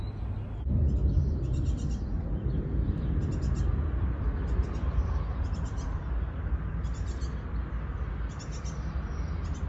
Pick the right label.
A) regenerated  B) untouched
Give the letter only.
B